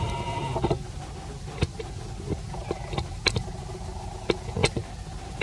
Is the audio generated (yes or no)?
no